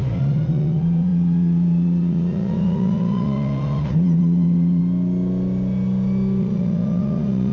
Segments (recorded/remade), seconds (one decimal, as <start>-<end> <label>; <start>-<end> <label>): 0.0-4.8 remade; 4.8-6.4 recorded; 6.4-7.5 remade